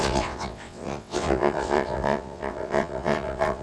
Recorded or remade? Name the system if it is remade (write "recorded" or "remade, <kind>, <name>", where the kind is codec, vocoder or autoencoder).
remade, vocoder, WaveNeXt